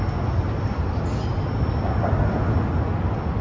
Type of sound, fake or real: real